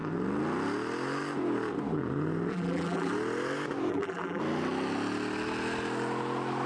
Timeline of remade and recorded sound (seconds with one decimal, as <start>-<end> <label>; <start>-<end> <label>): 0.0-2.5 recorded; 2.5-3.1 remade; 3.1-3.9 recorded; 3.9-4.4 remade; 4.4-6.7 recorded